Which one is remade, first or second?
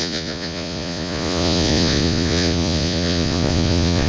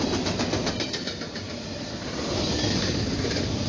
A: first